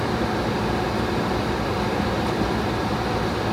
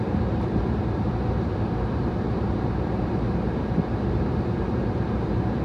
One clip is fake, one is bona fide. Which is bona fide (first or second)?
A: first